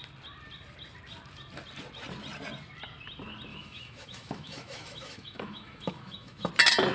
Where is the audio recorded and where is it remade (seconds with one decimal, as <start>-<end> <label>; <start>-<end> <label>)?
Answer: 0.0-3.5 recorded; 3.5-6.5 remade; 6.5-6.9 recorded